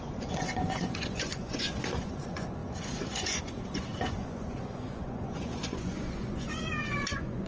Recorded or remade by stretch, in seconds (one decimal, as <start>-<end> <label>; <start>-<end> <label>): 0.0-7.5 remade

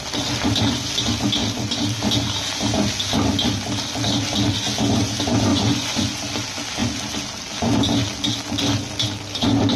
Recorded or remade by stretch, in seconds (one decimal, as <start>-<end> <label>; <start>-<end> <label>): 0.0-5.5 recorded; 5.5-6.2 remade; 6.2-9.8 recorded

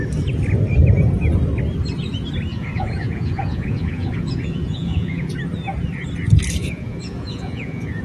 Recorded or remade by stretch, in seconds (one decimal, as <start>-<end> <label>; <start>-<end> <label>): 0.0-2.5 recorded; 2.5-5.3 remade; 5.3-6.6 recorded; 6.6-8.0 remade

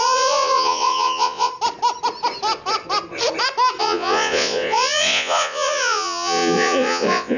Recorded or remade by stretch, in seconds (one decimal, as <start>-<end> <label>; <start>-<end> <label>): 0.0-1.5 remade; 1.5-3.8 recorded; 3.8-7.4 remade

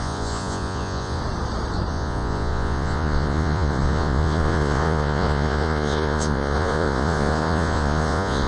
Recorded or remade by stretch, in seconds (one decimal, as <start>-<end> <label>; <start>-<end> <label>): 0.0-1.2 remade; 1.2-1.9 recorded; 1.9-8.5 remade